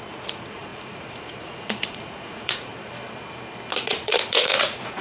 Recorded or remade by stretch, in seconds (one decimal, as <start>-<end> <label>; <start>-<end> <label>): 0.0-2.7 remade; 2.7-3.8 recorded; 3.8-5.0 remade